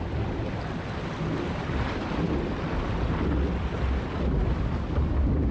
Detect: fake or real real